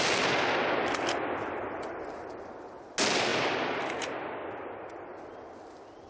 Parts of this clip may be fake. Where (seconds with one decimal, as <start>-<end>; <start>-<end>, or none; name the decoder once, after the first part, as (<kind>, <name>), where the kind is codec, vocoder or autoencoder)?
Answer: none